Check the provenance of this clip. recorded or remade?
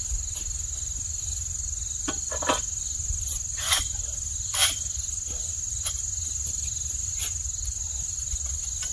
recorded